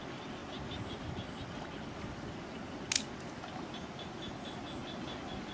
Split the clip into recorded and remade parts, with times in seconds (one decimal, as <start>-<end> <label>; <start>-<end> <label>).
0.0-5.5 recorded

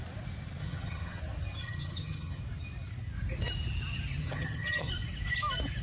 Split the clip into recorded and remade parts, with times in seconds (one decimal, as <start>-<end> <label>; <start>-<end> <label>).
0.0-0.6 recorded; 0.6-1.2 remade; 1.2-1.6 recorded; 1.6-2.4 remade; 2.4-4.2 recorded; 4.2-4.9 remade; 4.9-5.8 recorded